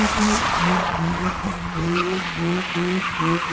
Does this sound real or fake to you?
fake